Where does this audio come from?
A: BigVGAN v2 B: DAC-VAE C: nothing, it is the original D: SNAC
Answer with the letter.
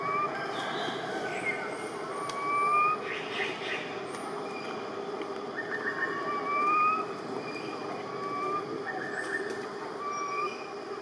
C